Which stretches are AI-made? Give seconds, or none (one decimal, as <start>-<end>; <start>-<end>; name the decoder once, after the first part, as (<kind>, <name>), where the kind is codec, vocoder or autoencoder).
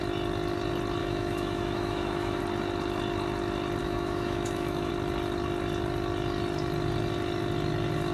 1.0-2.4 (autoencoder, DAC-VAE); 3.8-4.9